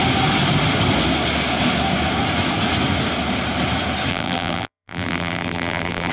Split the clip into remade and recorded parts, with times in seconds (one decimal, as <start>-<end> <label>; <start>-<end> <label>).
0.0-4.1 recorded; 4.1-6.1 remade